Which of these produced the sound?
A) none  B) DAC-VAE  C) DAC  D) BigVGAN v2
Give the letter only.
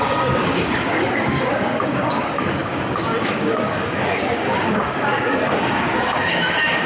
C